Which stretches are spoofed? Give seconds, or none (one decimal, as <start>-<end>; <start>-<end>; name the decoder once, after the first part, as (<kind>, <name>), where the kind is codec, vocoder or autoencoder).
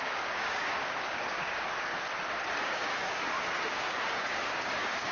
0.0-1.9 (codec, DAC); 2.6-5.1